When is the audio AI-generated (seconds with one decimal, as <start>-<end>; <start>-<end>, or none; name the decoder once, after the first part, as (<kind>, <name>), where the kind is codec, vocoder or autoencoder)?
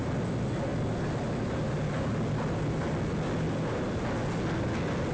none